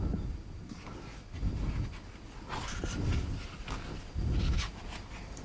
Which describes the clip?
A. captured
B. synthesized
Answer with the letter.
A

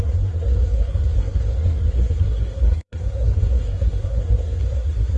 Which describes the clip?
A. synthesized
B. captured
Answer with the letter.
A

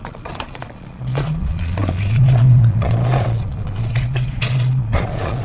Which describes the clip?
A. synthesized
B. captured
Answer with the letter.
A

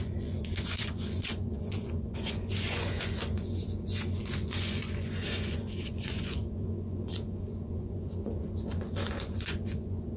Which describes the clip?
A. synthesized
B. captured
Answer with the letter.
A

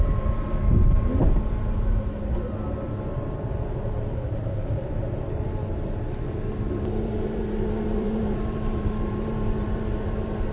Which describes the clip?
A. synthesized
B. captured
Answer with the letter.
A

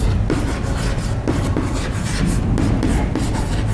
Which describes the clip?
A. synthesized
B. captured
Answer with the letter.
B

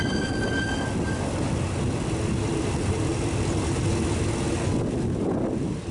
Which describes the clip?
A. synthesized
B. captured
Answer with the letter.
B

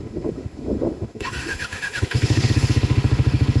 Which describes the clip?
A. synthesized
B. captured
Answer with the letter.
A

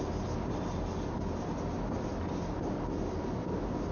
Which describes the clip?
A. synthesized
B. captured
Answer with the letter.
B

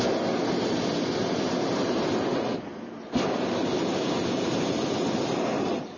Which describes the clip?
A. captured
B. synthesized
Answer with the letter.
A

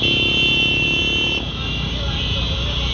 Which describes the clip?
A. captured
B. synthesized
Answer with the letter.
A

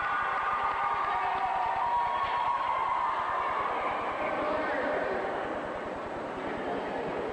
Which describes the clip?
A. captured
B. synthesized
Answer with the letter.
A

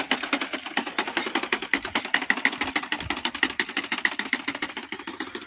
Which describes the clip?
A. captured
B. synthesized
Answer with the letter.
A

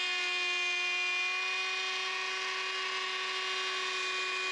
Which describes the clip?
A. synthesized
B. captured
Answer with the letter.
B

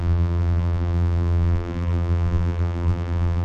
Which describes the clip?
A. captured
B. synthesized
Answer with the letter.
B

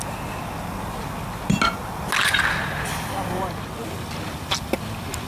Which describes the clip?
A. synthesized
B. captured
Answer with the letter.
B